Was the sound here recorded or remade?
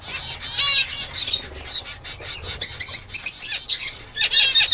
recorded